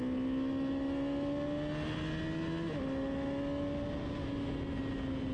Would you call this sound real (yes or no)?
yes